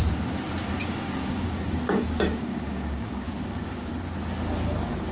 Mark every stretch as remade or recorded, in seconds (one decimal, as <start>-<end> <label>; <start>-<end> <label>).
0.0-0.8 recorded; 0.8-3.9 remade; 3.9-5.1 recorded

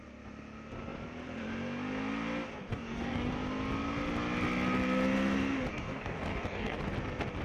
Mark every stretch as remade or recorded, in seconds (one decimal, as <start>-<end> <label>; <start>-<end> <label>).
0.0-2.7 recorded; 2.7-3.3 remade; 3.3-5.7 recorded; 5.7-6.8 remade; 6.8-7.4 recorded

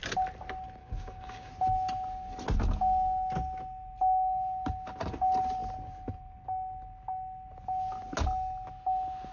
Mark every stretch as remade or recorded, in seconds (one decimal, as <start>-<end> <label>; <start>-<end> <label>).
0.0-0.8 recorded; 0.8-1.5 remade; 1.5-9.3 recorded

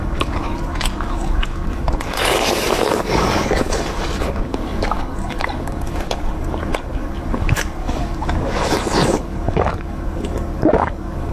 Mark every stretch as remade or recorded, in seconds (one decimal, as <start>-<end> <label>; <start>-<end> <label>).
0.0-11.3 remade